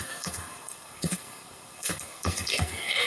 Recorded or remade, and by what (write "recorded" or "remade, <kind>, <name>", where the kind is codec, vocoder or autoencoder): remade, codec, SNAC